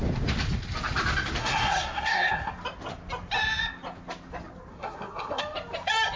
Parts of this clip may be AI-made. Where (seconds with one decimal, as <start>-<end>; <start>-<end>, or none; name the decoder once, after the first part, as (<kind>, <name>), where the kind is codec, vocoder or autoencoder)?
1.4-2.5 (codec, SNAC); 4.7-5.4